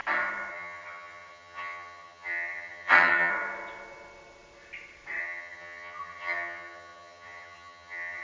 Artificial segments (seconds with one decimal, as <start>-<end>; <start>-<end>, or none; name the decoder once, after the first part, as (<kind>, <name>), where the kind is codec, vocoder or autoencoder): 0.5-3.3 (vocoder, HiFi-GAN); 5.2-8.2